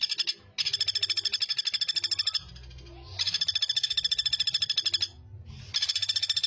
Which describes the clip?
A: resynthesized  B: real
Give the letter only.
B